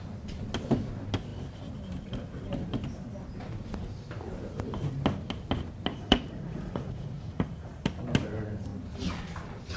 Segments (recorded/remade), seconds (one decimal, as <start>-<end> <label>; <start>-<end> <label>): 0.0-5.9 recorded; 5.9-7.9 remade; 7.9-9.8 recorded